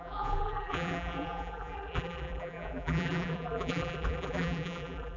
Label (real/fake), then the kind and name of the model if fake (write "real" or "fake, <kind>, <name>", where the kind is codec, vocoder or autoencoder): fake, vocoder, BigVGAN v2